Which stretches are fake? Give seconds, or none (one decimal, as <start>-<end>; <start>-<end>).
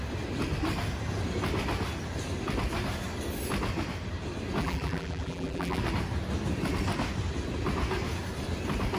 4.6-5.8